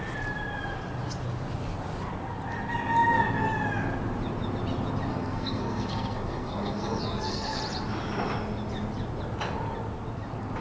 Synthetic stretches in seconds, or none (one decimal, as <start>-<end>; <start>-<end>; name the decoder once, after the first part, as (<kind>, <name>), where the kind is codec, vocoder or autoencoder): 5.1-7.6 (codec, SNAC)